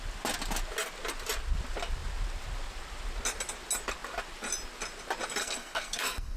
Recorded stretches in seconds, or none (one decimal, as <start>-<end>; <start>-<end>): 0.0-5.4